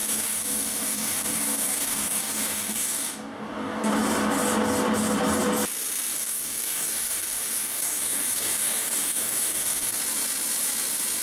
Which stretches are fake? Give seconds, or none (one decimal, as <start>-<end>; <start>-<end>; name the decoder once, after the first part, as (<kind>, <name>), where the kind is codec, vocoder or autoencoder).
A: 0.0-3.9 (codec, DAC); 6.1-10.0